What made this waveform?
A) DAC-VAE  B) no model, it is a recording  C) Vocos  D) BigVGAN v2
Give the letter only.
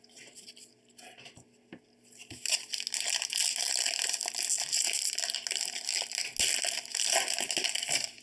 B